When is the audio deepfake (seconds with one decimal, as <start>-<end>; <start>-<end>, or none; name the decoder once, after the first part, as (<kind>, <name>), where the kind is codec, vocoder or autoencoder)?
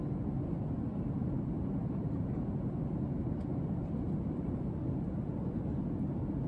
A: 0.9-2.2 (vocoder, BigVGAN v2); 3.5-4.6